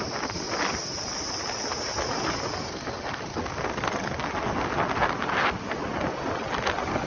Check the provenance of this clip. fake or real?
real